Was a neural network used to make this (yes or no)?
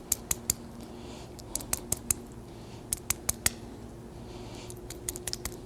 no